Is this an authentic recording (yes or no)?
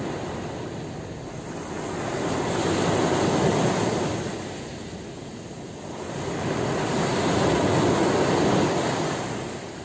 yes